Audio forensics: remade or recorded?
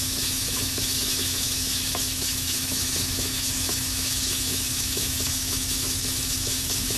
remade